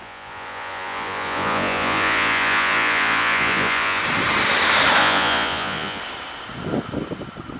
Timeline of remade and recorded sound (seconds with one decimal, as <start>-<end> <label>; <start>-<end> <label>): 0.0-4.0 remade; 4.0-5.0 recorded; 5.0-6.0 remade; 6.0-7.6 recorded